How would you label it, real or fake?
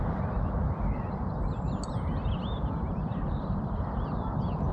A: real